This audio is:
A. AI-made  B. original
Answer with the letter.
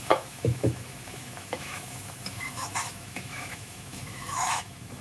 A